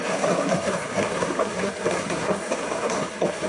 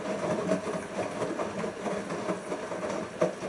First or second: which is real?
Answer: second